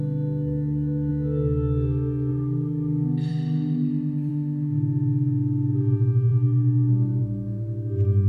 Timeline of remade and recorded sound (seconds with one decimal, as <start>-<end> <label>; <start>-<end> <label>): 0.0-8.3 recorded